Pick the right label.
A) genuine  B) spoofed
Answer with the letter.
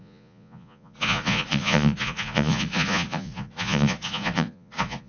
B